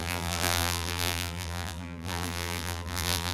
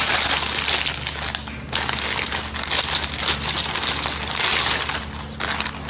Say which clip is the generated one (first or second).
first